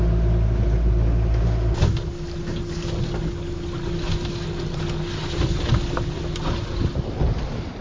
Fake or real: real